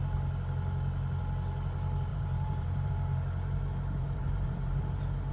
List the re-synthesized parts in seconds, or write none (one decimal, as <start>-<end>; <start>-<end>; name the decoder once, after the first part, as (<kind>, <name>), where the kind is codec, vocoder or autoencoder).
2.1-2.9 (vocoder, BigVGAN v2); 4.0-4.8